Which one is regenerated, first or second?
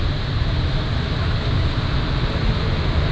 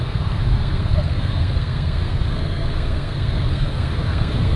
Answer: second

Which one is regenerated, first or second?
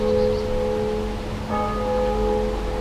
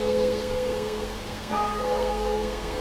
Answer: second